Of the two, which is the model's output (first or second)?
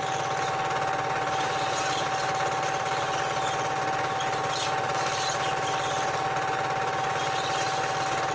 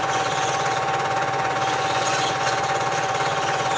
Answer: second